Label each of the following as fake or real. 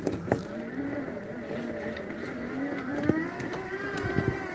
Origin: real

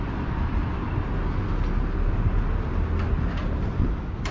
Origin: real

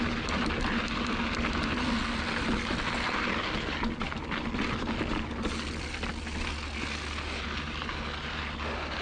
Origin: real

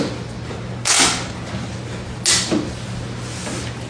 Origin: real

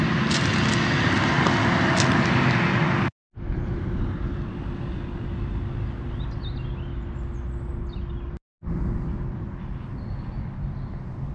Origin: real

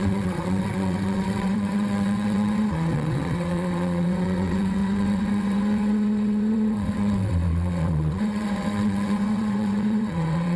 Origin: fake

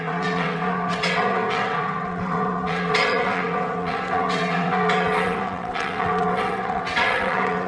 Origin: fake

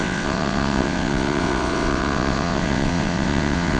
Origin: fake